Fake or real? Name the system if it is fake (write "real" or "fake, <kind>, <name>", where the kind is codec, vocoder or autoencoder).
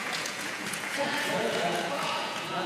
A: fake, vocoder, Vocos